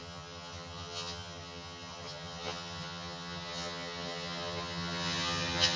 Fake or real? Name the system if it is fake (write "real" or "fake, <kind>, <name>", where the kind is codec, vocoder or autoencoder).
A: fake, vocoder, HiFi-GAN